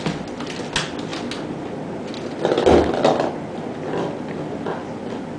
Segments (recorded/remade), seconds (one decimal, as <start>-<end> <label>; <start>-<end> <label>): 0.0-5.4 recorded